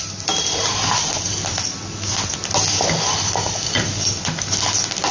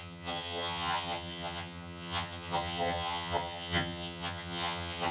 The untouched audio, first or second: first